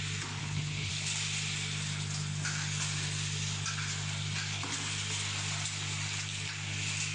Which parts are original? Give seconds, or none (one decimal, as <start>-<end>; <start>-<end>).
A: 0.0-0.4; 0.9-7.1